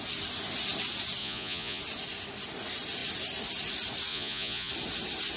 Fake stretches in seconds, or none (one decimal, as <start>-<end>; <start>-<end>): 1.2-1.8; 4.1-4.7